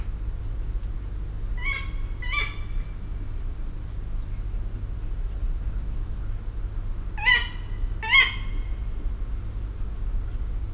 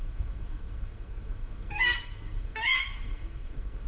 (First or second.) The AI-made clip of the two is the second